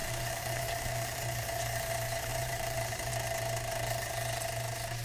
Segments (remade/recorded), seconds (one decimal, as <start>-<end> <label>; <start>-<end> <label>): 0.0-1.9 remade; 1.9-2.3 recorded; 2.3-3.1 remade; 3.1-5.0 recorded